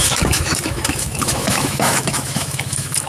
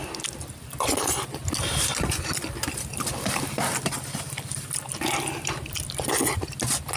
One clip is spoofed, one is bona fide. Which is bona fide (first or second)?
second